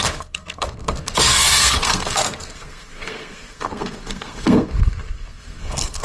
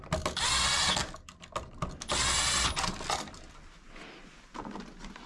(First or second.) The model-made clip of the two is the first